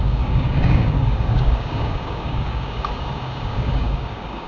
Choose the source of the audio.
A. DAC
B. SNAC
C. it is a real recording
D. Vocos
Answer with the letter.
A